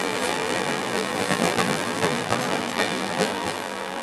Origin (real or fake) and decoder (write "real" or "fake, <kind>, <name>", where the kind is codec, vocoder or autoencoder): fake, vocoder, BigVGAN v2